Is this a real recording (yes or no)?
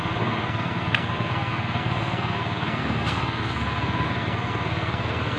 no